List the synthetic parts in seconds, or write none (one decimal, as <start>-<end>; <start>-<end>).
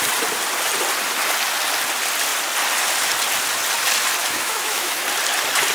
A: 4.2-5.0